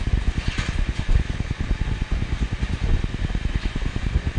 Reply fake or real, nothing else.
fake